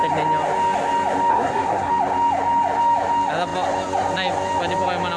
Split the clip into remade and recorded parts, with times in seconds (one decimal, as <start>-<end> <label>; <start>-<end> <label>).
0.0-1.3 recorded; 1.3-1.9 remade; 1.9-5.2 recorded